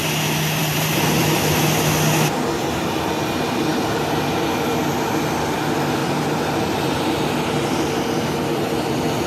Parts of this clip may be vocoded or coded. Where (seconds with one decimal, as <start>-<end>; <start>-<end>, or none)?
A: 0.6-1.2; 6.0-8.3